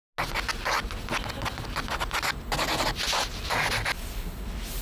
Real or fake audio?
real